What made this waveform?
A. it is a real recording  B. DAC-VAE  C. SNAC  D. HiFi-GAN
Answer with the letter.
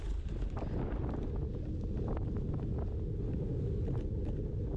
A